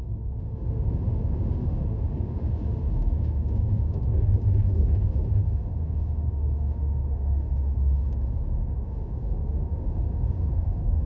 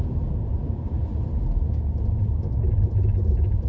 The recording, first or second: second